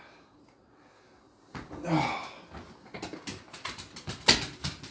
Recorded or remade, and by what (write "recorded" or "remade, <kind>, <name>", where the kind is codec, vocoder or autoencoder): recorded